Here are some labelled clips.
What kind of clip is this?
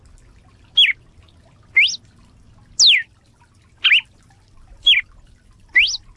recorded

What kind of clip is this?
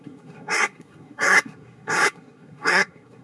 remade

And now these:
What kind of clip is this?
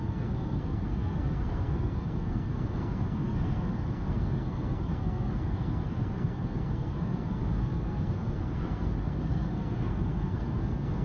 remade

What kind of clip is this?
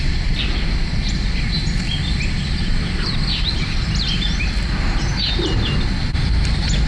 recorded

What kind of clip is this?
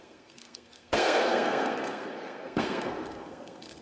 remade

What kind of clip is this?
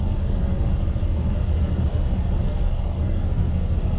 remade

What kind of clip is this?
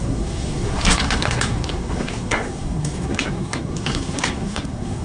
remade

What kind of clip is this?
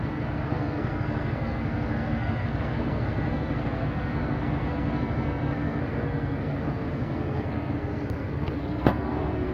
remade